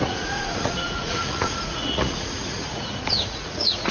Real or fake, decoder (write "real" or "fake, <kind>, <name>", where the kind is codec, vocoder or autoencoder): fake, vocoder, Vocos